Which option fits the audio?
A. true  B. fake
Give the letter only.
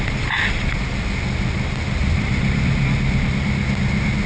A